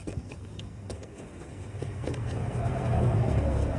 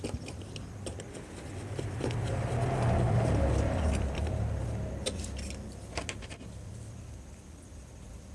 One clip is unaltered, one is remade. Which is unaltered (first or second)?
second